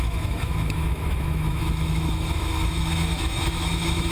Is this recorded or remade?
remade